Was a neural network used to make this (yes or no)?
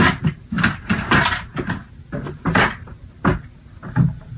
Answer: no